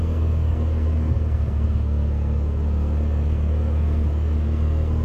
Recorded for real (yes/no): no